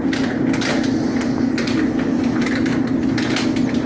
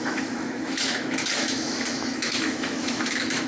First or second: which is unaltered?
first